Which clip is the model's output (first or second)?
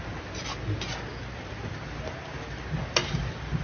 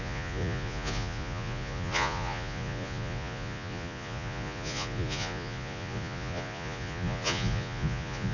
second